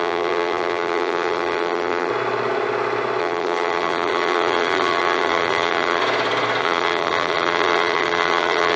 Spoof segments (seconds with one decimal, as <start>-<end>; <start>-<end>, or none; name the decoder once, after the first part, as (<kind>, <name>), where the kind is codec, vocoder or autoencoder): 0.0-2.1 (vocoder, BigVGAN v2); 3.2-6.0; 6.6-8.8